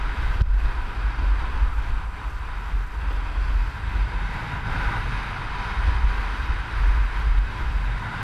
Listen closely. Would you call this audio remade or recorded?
recorded